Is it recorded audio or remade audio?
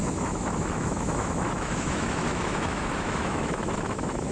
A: remade